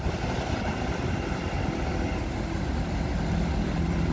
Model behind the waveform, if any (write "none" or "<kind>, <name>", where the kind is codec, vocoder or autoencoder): none